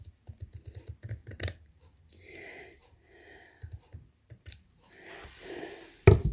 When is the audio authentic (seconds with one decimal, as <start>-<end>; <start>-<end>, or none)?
0.0-1.2; 4.9-6.3